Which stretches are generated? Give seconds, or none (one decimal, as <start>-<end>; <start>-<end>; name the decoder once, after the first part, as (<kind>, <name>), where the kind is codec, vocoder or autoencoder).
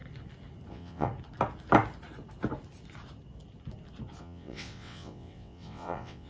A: 0.7-1.1 (vocoder, WaveNeXt); 4.2-6.3